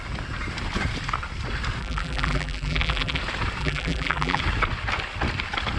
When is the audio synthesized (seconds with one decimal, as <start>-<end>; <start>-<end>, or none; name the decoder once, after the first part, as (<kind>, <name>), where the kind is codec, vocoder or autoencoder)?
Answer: 1.8-3.2 (vocoder, BigVGAN v2); 3.6-4.4

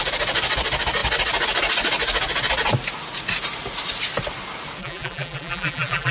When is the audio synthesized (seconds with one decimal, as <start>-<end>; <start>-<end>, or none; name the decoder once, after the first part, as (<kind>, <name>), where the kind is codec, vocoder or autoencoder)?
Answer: 4.8-6.1 (vocoder, BigVGAN v2)

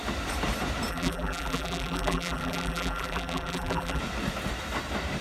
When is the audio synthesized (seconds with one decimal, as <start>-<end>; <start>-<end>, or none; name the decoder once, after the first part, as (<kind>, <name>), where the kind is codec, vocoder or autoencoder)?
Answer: 0.9-4.0 (vocoder, BigVGAN v2)